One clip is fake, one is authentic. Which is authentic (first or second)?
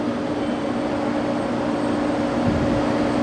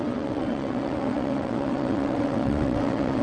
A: first